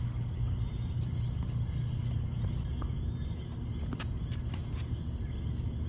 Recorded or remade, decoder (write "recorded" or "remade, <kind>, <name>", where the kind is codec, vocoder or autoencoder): recorded